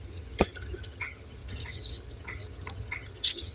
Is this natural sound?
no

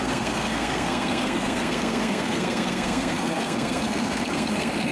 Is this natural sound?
no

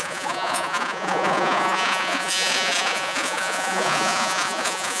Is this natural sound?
no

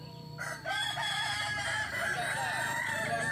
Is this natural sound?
yes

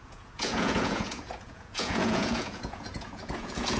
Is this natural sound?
no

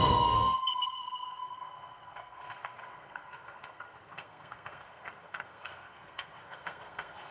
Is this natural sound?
no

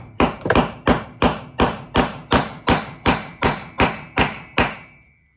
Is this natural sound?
no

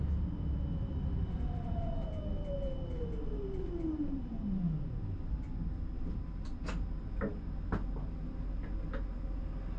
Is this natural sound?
yes